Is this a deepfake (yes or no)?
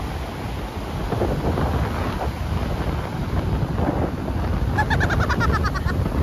no